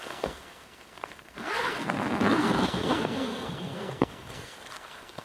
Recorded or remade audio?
remade